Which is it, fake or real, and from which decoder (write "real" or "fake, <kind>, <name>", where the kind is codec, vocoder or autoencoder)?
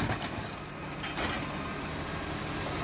real